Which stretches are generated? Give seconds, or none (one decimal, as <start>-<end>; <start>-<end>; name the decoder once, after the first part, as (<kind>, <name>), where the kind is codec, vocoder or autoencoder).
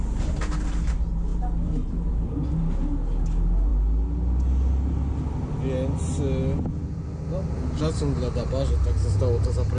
none